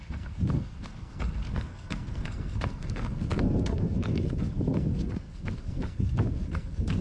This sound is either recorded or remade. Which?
remade